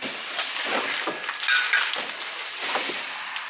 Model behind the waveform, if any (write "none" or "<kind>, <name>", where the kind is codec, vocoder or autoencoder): none